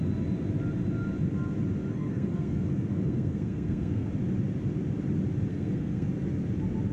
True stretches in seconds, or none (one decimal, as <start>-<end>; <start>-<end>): 0.0-1.9; 4.1-5.5; 6.1-6.9